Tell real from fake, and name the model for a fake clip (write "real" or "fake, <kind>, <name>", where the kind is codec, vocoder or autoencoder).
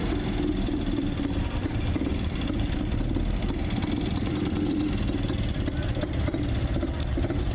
fake, vocoder, BigVGAN v2